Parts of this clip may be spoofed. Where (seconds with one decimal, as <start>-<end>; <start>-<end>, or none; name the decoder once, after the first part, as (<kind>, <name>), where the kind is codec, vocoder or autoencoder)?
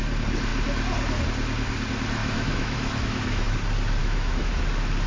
2.2-3.5 (autoencoder, DAC-VAE); 4.0-4.5